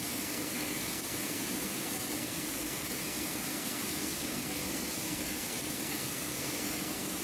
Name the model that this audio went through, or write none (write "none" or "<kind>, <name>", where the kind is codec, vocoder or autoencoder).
codec, SNAC